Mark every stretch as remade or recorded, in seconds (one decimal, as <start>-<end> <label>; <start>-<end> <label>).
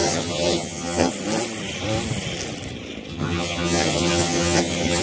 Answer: 0.0-1.1 remade; 1.1-3.1 recorded; 3.1-5.0 remade